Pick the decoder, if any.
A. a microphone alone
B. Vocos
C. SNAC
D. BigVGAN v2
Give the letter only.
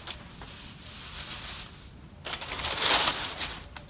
A